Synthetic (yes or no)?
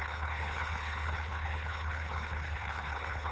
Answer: yes